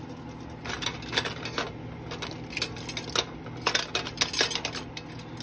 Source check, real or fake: real